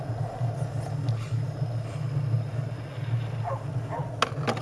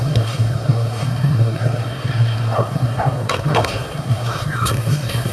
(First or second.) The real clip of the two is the first